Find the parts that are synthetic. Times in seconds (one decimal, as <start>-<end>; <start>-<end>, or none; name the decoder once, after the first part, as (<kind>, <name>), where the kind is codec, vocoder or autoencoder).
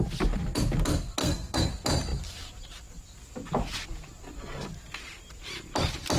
1.2-1.7 (codec, SNAC)